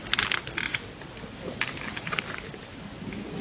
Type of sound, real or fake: real